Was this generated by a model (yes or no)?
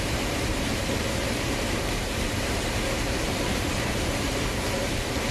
yes